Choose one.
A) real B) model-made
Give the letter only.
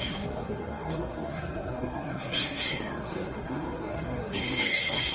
B